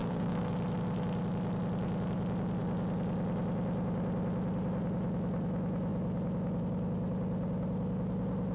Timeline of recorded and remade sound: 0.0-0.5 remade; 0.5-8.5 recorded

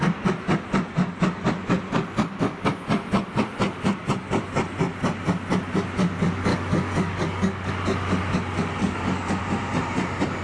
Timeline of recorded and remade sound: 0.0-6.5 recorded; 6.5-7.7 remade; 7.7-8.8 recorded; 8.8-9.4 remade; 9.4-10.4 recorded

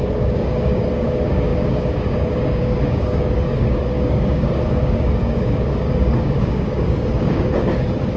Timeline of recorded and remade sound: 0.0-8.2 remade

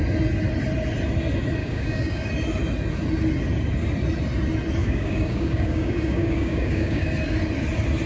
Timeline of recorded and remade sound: 0.0-1.6 recorded; 1.6-2.3 remade; 2.3-4.8 recorded; 4.8-7.1 remade; 7.1-8.1 recorded

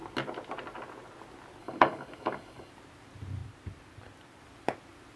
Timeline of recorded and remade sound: 0.0-1.6 recorded; 1.6-2.7 remade; 2.7-5.2 recorded

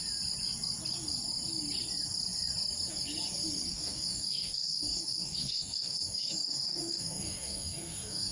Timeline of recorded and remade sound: 0.0-3.7 recorded; 3.7-8.3 remade

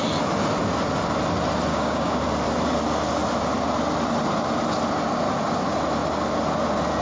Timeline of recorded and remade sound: 0.0-1.7 recorded; 1.7-2.2 remade; 2.2-7.0 recorded